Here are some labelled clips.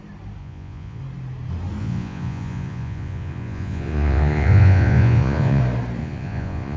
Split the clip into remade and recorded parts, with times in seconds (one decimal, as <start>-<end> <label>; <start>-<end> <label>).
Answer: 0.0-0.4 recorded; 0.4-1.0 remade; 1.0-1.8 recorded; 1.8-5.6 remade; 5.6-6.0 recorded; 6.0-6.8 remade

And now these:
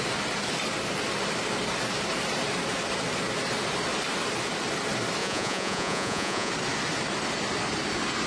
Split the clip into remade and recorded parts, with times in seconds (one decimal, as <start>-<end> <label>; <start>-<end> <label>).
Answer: 0.0-5.2 recorded; 5.2-6.5 remade; 6.5-8.3 recorded

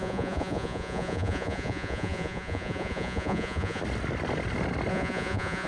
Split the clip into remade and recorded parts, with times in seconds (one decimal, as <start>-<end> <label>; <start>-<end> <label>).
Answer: 0.0-3.8 remade; 3.8-4.9 recorded; 4.9-5.7 remade

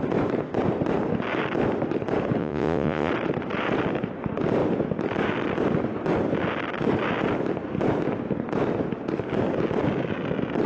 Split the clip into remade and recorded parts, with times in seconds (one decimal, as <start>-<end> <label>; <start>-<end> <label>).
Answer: 0.0-2.4 recorded; 2.4-3.1 remade; 3.1-10.7 recorded